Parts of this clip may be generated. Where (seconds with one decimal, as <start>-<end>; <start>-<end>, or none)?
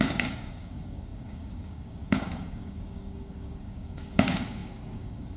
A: 0.0-5.4